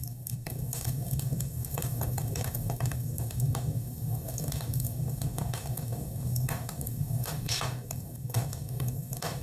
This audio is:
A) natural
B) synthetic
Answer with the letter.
B